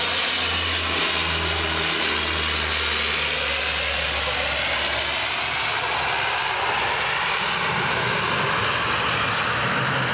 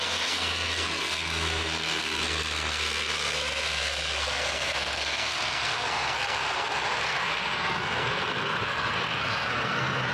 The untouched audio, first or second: first